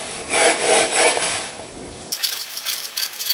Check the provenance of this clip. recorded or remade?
remade